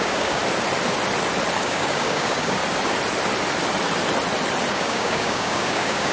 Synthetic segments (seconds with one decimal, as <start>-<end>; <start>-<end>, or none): 0.0-0.4; 1.6-2.6; 4.7-6.1